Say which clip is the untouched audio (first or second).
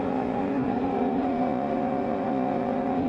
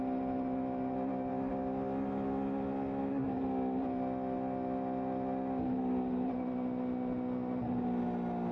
second